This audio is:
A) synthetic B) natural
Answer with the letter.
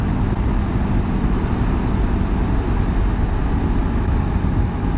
B